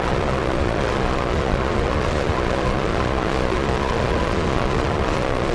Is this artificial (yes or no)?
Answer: yes